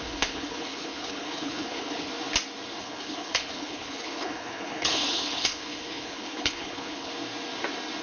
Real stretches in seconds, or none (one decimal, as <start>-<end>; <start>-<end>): 2.1-2.8; 7.1-8.0